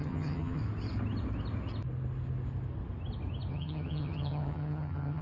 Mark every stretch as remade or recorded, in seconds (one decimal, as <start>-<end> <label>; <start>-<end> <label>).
0.0-0.6 remade; 0.6-3.5 recorded; 3.5-5.2 remade